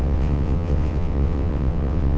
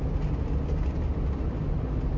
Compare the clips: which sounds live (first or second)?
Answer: second